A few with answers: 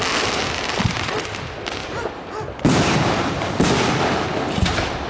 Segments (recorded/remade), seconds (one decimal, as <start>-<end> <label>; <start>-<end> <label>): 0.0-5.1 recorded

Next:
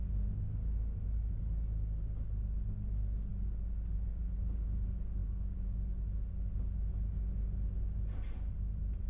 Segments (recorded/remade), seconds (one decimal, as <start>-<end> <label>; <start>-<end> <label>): 0.0-5.2 recorded; 5.2-6.0 remade; 6.0-9.1 recorded

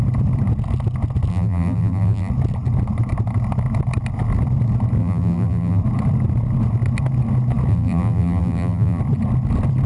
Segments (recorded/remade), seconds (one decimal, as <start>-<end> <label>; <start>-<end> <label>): 0.0-1.3 recorded; 1.3-2.3 remade; 2.3-5.0 recorded; 5.0-5.8 remade; 5.8-7.7 recorded; 7.7-9.0 remade; 9.0-9.9 recorded